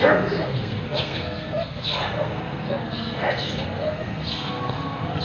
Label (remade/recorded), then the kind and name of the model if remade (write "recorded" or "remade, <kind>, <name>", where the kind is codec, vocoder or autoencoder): remade, codec, SNAC